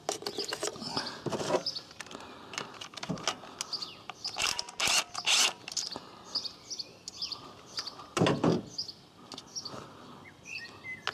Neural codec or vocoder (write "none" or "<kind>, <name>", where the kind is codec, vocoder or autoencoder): none